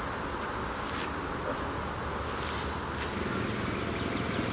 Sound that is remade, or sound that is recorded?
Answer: recorded